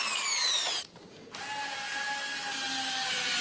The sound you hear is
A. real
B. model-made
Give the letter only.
A